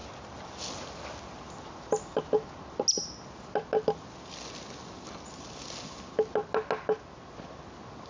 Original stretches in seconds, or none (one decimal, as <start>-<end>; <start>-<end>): 0.0-8.1